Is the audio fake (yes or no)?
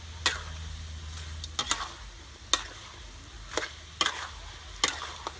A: no